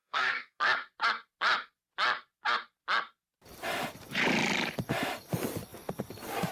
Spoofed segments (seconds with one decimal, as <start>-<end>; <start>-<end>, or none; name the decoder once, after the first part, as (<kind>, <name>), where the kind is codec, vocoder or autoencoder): 0.0-0.6 (codec, SNAC)